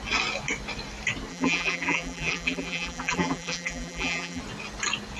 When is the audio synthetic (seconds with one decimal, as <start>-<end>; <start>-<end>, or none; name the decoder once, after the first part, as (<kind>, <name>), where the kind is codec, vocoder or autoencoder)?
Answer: 1.3-4.4 (vocoder, BigVGAN v2)